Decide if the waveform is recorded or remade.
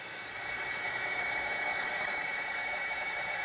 remade